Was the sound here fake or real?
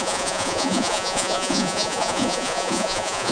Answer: fake